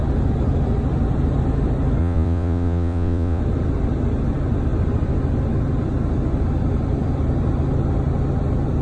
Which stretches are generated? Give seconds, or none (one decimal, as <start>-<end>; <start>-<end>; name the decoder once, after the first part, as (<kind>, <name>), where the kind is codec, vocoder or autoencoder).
2.0-3.4 (vocoder, Vocos)